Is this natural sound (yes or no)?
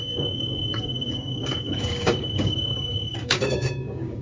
no